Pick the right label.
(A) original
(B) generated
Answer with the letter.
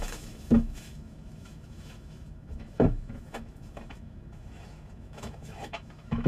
B